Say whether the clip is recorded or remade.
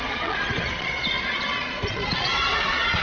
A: remade